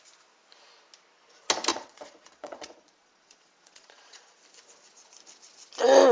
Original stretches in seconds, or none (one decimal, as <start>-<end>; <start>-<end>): 0.0-1.7; 4.4-6.1